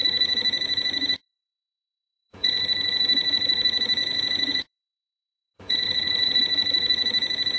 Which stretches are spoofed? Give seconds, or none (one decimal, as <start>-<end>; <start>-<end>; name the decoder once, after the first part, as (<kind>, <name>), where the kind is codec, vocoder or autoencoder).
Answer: 1.2-2.6 (vocoder, Vocos); 4.0-6.4